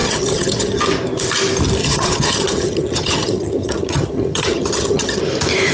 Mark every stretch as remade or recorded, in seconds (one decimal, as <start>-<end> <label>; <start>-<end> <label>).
0.0-0.8 remade; 0.8-1.8 recorded; 1.8-5.2 remade; 5.2-5.7 recorded